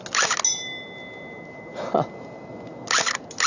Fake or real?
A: real